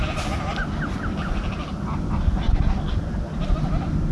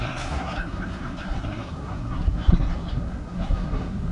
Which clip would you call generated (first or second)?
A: second